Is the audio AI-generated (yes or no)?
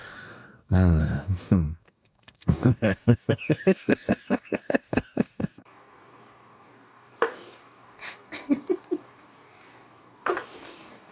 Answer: yes